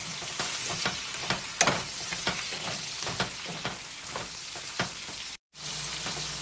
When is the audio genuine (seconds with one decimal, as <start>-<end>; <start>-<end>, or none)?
0.0-2.6; 3.2-6.4